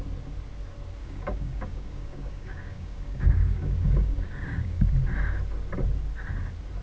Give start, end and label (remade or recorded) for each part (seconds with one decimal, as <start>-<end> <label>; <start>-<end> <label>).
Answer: 0.0-1.0 recorded; 1.0-4.9 remade; 4.9-6.8 recorded

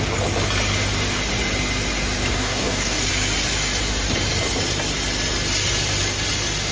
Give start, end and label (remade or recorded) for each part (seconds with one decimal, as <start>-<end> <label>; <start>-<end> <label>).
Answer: 0.0-2.3 recorded; 2.3-3.1 remade; 3.1-6.7 recorded

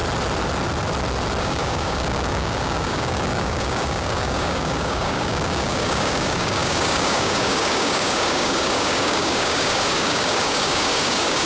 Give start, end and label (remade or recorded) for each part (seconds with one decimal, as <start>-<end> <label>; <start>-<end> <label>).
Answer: 0.0-1.4 recorded; 1.4-11.5 remade

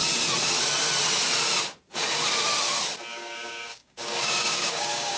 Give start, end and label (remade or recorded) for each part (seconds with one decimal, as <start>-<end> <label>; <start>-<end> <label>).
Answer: 0.0-3.1 recorded; 3.1-5.2 remade

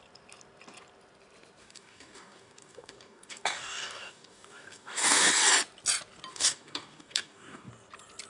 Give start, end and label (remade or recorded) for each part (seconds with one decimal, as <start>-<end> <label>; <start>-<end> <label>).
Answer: 0.0-1.6 recorded; 1.6-5.3 remade; 5.3-6.3 recorded; 6.3-7.7 remade; 7.7-8.3 recorded

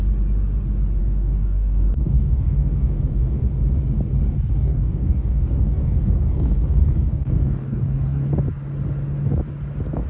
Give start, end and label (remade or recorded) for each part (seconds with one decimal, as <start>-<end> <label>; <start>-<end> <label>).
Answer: 0.0-1.0 recorded; 1.0-3.4 remade; 3.4-4.6 recorded; 4.6-8.3 remade; 8.3-10.1 recorded

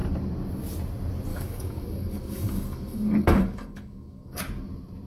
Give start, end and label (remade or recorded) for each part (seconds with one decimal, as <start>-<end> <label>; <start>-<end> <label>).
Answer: 0.0-1.3 recorded; 1.3-4.4 remade; 4.4-5.1 recorded

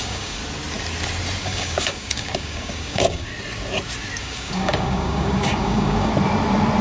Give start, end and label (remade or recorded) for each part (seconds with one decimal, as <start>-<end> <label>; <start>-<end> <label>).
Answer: 0.0-0.4 remade; 0.4-1.4 recorded; 1.4-3.3 remade; 3.3-4.2 recorded; 4.2-6.1 remade; 6.1-6.8 recorded